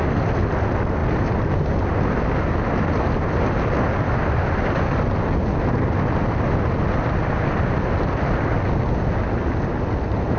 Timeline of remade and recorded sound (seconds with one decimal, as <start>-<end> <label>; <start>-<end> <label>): 0.0-10.4 recorded